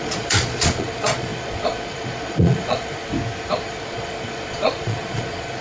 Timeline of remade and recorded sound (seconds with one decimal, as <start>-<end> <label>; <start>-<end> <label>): 0.0-3.0 remade; 3.0-3.5 recorded; 3.5-5.6 remade

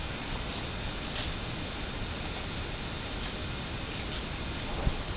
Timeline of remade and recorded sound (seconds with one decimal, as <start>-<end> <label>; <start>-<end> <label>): 0.0-3.4 recorded; 3.4-4.1 remade; 4.1-5.2 recorded

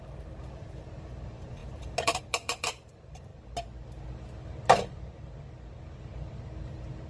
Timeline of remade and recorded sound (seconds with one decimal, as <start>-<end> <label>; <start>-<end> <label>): 0.0-3.3 remade; 3.3-7.1 recorded